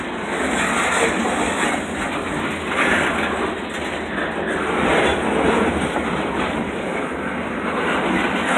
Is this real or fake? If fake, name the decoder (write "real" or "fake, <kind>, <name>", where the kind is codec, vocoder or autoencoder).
real